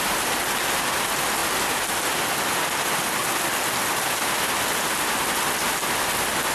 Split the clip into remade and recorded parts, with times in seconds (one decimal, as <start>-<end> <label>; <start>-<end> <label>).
0.0-6.5 recorded